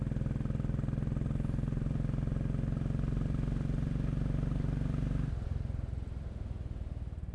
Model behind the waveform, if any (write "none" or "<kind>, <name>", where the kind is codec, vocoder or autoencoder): none